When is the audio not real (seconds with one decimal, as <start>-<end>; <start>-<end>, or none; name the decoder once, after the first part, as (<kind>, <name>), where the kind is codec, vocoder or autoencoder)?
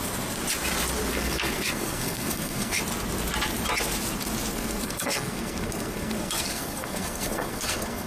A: 1.1-2.8 (codec, SNAC); 4.5-8.1